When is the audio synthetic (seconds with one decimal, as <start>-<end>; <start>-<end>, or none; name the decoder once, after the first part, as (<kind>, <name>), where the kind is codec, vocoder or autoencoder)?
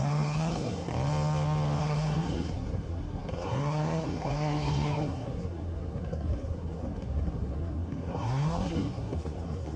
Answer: 0.0-0.9 (codec, SNAC); 1.8-9.8